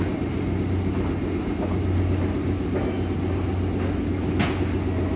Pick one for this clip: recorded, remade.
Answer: recorded